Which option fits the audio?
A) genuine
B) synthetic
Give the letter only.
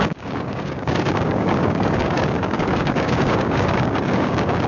B